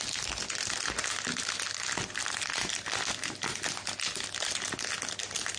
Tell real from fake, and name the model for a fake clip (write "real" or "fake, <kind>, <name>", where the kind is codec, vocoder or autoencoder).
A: real